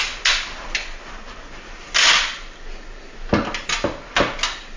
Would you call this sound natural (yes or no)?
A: yes